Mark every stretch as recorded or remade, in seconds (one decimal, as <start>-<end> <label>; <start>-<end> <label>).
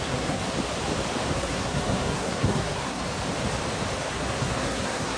0.0-0.4 remade; 0.4-1.3 recorded; 1.3-3.0 remade; 3.0-4.1 recorded; 4.1-5.2 remade